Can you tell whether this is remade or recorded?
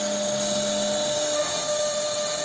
recorded